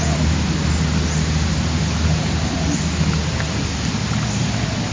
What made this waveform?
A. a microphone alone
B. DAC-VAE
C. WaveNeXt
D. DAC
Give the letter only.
A